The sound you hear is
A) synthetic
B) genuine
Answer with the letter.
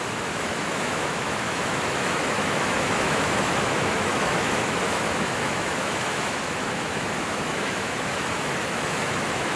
A